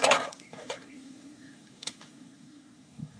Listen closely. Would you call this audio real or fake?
fake